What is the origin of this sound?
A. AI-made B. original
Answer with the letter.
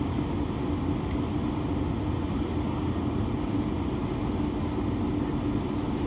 B